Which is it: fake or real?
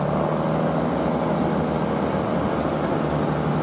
real